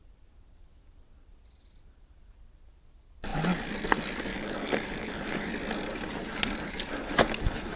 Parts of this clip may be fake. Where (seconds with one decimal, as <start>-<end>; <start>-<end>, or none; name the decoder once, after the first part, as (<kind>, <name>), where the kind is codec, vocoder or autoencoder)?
4.3-5.5 (codec, DAC)